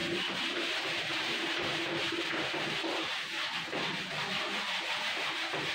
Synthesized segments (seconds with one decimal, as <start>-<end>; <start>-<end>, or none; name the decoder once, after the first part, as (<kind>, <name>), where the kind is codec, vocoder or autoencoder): 0.5-5.7 (vocoder, BigVGAN v2)